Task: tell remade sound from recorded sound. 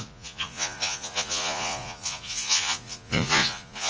remade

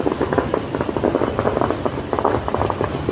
recorded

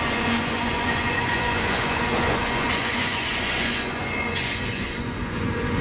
remade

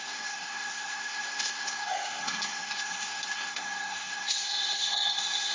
remade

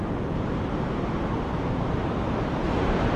recorded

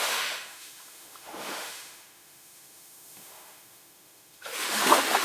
remade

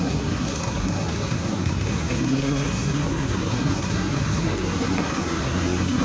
remade